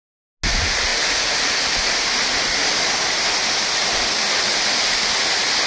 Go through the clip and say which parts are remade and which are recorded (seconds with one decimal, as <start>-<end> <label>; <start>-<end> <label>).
0.0-5.7 recorded